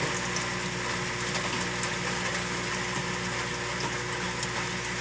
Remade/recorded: recorded